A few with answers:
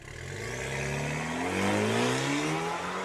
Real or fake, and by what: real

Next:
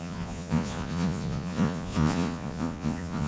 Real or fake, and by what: fake, vocoder, Vocos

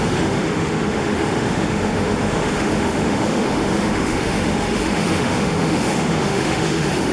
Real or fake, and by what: fake, autoencoder, DAC-VAE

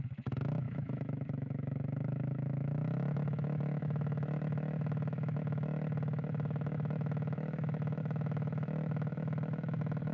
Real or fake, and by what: fake, autoencoder, DAC-VAE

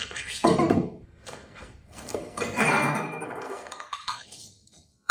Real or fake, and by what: fake, codec, SNAC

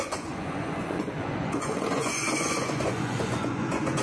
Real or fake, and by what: fake, vocoder, Vocos